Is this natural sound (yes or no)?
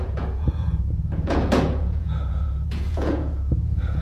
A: no